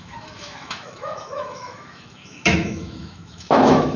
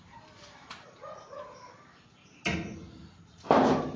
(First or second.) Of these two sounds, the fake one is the first